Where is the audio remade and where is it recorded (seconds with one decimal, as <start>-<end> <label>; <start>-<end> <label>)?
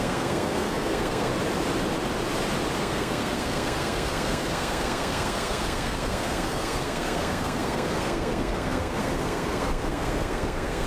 0.0-1.3 remade; 1.3-2.8 recorded; 2.8-10.9 remade